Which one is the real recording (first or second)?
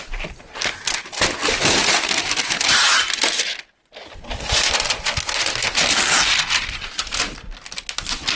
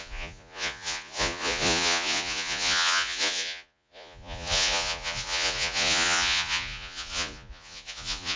first